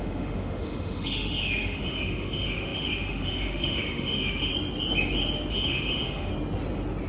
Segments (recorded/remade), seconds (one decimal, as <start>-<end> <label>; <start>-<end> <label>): 0.0-4.5 remade; 4.5-5.5 recorded; 5.5-6.3 remade; 6.3-7.1 recorded